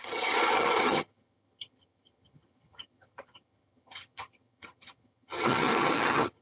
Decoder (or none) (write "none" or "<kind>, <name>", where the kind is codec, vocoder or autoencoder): vocoder, HiFi-GAN